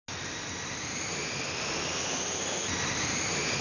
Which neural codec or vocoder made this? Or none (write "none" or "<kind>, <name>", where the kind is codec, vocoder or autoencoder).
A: none